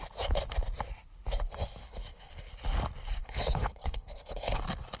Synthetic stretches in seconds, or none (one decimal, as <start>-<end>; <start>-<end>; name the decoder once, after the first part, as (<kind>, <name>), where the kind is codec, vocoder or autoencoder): 1.8-2.5 (codec, HILCodec); 3.2-4.6